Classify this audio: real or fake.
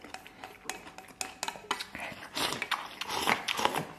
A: real